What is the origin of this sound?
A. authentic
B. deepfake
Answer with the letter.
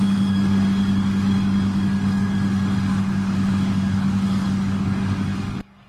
B